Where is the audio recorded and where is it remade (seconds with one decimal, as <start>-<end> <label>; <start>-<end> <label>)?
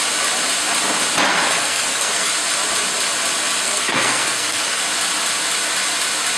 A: 0.0-1.3 recorded; 1.3-2.3 remade; 2.3-3.6 recorded; 3.6-4.8 remade; 4.8-6.4 recorded